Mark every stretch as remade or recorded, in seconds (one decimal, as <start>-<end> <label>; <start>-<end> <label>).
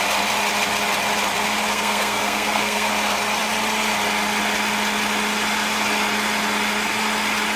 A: 0.0-1.7 recorded; 1.7-2.9 remade; 2.9-7.6 recorded